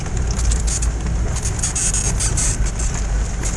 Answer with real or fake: real